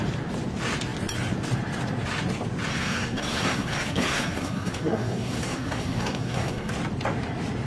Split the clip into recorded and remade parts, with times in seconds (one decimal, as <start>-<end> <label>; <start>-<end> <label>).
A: 0.0-2.7 recorded; 2.7-6.7 remade; 6.7-7.7 recorded